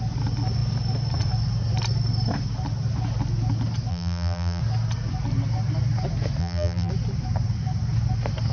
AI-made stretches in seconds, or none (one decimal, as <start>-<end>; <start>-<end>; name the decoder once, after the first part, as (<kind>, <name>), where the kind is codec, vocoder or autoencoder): 3.9-4.6 (vocoder, BigVGAN v2); 6.4-6.9